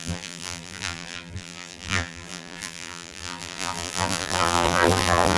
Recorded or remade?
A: remade